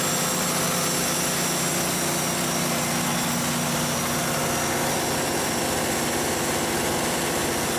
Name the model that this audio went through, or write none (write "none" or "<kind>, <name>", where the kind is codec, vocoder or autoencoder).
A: none